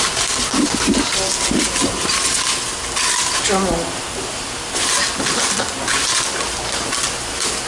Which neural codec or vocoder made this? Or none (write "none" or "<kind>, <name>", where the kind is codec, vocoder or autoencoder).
none